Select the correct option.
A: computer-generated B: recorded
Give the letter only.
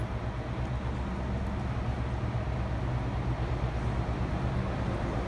B